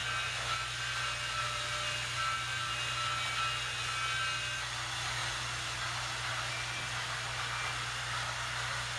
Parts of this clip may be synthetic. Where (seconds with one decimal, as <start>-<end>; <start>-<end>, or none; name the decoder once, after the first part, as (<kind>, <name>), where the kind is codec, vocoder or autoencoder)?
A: none